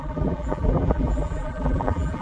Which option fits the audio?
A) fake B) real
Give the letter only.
A